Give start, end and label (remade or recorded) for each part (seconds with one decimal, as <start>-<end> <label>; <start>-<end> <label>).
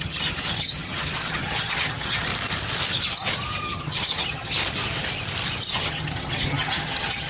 0.0-2.3 remade; 2.3-3.6 recorded; 3.6-4.5 remade; 4.5-5.7 recorded; 5.7-7.3 remade